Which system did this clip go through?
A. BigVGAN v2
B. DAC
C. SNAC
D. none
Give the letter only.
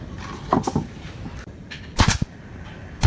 D